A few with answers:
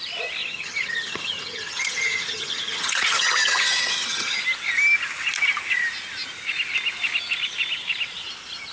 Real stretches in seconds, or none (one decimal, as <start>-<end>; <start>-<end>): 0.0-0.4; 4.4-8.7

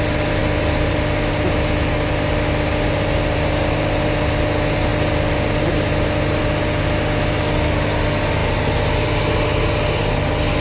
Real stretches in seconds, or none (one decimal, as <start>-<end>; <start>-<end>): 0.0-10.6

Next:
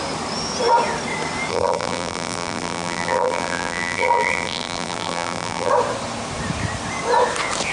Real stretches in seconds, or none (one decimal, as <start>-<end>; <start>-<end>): 0.0-1.5; 5.7-7.7

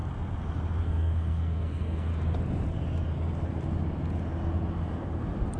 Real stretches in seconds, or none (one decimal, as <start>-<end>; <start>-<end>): 0.0-0.8; 2.1-5.6

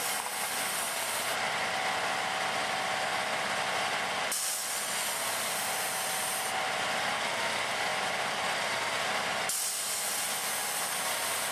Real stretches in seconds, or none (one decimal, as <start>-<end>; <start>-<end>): 0.0-11.5